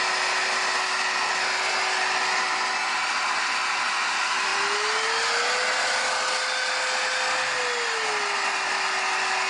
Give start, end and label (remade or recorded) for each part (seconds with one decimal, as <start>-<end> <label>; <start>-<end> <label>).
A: 0.0-9.5 recorded